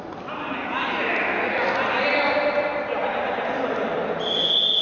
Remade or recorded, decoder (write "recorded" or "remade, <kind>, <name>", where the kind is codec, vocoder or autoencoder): recorded